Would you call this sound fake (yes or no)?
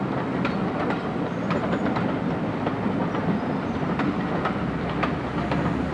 no